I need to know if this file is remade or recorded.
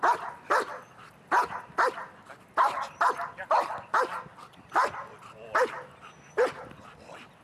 recorded